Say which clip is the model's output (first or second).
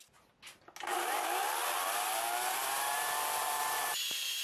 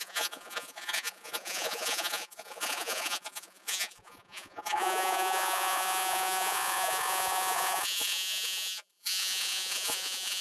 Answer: second